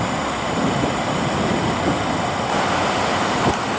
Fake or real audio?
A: real